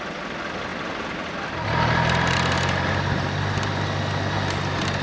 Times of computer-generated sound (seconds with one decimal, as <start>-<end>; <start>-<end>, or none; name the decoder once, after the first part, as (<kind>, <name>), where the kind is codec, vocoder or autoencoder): none